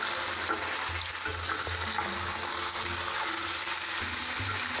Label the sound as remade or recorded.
recorded